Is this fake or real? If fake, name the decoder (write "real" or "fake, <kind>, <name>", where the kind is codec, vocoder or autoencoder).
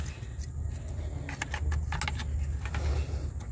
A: real